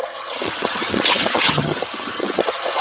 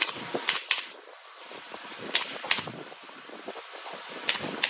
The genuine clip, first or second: second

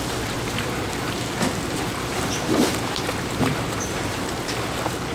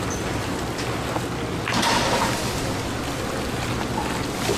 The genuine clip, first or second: second